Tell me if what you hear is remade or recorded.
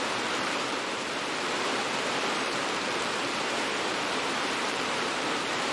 remade